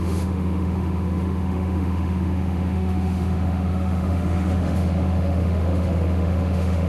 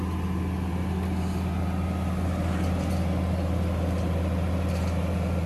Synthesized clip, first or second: first